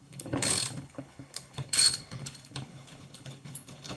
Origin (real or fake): fake